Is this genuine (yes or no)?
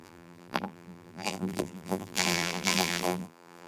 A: no